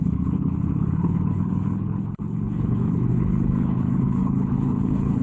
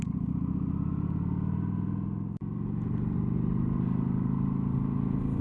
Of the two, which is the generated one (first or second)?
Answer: first